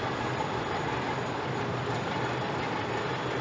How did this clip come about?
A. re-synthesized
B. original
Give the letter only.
B